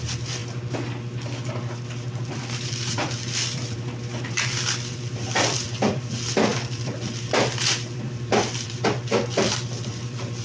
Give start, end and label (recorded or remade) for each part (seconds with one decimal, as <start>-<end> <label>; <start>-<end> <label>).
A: 0.0-0.4 remade; 0.4-2.2 recorded; 2.2-10.4 remade